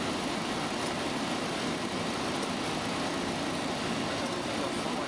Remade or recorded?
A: recorded